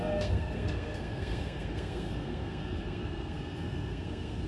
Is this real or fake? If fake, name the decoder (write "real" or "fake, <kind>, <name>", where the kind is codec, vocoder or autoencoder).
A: fake, codec, SNAC